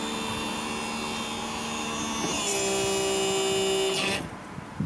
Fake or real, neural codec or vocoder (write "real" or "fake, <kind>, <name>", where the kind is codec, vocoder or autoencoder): real